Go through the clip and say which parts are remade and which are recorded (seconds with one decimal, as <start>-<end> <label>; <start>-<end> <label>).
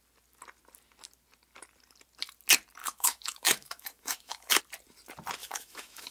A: 0.0-2.8 recorded; 2.8-4.6 remade; 4.6-5.4 recorded; 5.4-6.1 remade